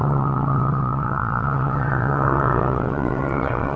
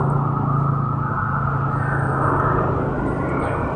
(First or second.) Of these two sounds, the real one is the second